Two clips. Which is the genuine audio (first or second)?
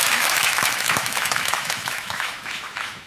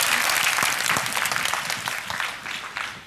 second